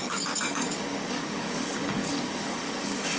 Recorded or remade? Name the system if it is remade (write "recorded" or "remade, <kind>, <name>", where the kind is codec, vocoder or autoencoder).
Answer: remade, codec, DAC